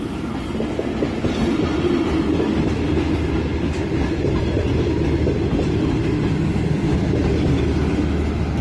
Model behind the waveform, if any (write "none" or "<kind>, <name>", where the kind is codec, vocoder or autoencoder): none